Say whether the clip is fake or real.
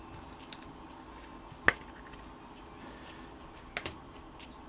real